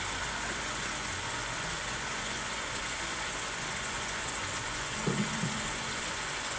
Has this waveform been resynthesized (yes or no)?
yes